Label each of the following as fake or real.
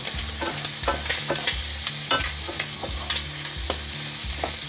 real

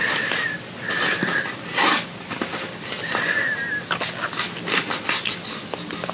real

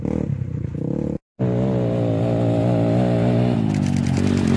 real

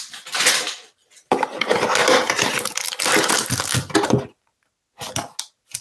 real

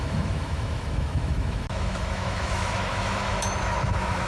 fake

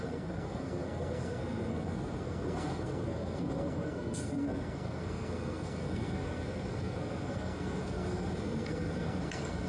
fake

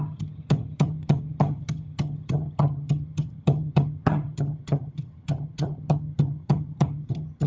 fake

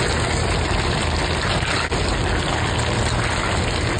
real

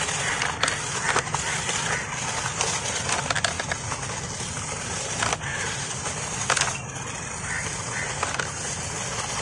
real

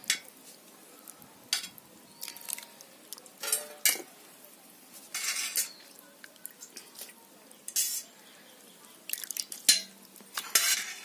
real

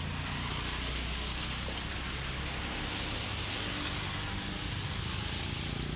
real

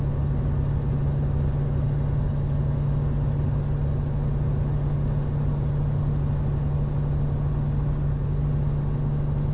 real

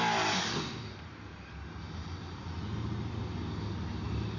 real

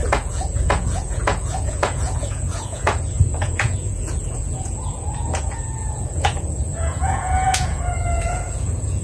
fake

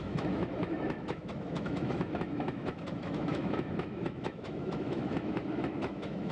fake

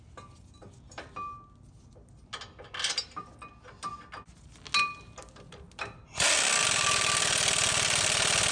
real